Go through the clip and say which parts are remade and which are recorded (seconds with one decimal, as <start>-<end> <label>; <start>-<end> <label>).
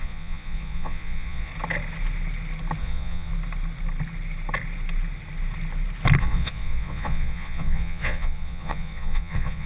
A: 0.0-1.5 remade; 1.5-2.8 recorded; 2.8-3.3 remade; 3.3-6.2 recorded; 6.2-9.7 remade